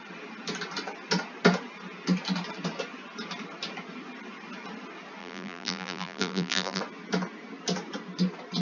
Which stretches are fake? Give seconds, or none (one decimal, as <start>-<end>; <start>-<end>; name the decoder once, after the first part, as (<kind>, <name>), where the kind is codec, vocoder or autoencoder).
5.2-6.8 (vocoder, BigVGAN v2)